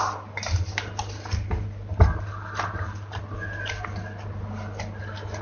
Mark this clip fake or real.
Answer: real